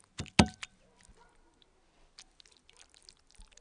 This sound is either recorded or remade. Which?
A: recorded